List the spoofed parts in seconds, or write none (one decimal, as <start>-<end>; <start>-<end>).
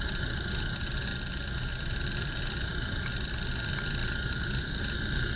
none